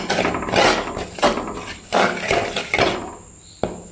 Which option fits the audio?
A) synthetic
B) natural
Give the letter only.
B